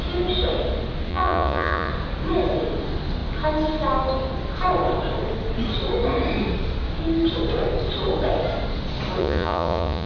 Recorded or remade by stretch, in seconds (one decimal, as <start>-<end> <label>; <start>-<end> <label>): 0.0-1.1 recorded; 1.1-1.9 remade; 1.9-9.2 recorded; 9.2-10.1 remade